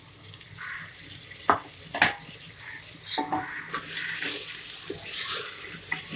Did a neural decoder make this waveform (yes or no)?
no